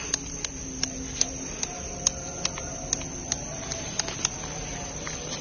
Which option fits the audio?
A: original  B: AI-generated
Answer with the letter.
A